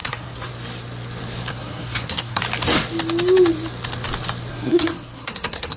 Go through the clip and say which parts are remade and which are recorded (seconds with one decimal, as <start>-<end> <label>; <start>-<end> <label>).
0.0-0.5 remade; 0.5-1.5 recorded; 1.5-2.4 remade; 2.4-4.5 recorded; 4.5-5.8 remade